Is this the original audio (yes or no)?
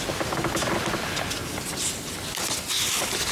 yes